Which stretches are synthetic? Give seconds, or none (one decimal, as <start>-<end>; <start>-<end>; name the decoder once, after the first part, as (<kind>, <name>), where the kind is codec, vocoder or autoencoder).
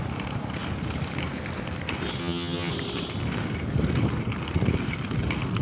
2.2-2.7 (vocoder, HiFi-GAN)